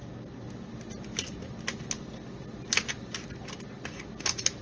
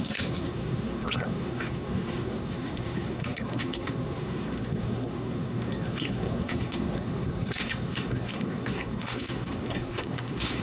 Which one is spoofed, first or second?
second